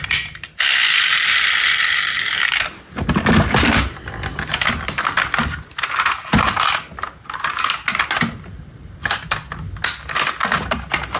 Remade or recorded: recorded